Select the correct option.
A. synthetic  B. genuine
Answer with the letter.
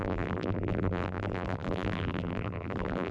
A